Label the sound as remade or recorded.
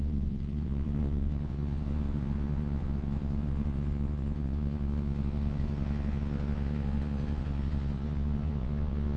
remade